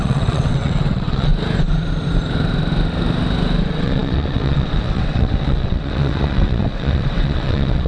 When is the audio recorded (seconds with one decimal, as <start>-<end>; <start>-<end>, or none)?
1.3-3.6